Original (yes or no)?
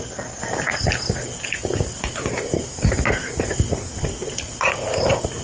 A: yes